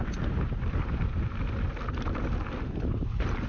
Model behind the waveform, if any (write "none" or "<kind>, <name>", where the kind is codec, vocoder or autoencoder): none